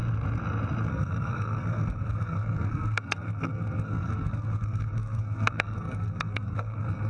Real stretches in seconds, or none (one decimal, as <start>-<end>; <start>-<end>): 0.0-0.9